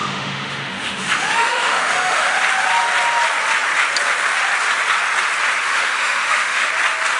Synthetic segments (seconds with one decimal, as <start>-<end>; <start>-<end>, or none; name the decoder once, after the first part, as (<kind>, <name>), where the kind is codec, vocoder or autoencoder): 0.0-2.4 (autoencoder, DAC-VAE); 5.7-6.7